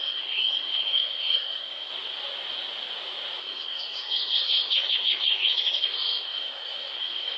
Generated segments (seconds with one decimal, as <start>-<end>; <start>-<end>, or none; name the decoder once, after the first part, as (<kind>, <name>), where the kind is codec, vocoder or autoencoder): 0.0-1.9 (codec, SNAC); 3.4-7.4